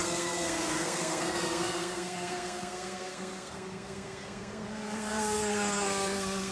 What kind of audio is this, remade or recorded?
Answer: remade